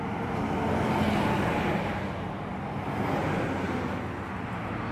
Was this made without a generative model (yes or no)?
yes